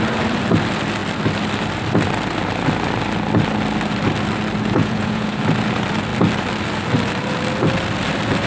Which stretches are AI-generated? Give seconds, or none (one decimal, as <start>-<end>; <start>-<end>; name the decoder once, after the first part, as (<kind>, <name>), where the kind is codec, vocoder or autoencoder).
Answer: 4.8-5.4 (vocoder, Vocos)